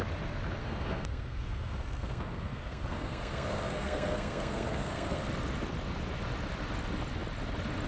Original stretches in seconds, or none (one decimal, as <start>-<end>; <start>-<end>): 0.0-0.6; 5.2-7.9